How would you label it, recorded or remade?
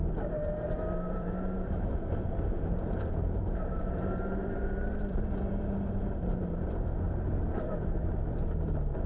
remade